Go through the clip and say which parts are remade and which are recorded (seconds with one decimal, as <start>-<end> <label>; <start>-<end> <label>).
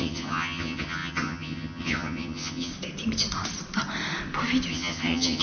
0.0-2.7 remade; 2.7-4.7 recorded; 4.7-5.4 remade